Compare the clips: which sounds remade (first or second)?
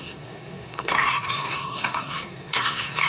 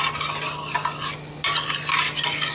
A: first